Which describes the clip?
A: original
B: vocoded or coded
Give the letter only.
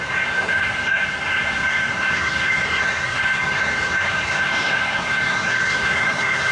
B